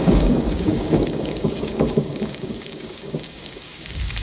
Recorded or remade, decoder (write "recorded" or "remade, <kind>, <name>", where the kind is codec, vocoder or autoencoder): remade, codec, DAC